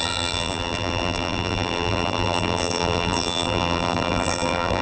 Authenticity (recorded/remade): remade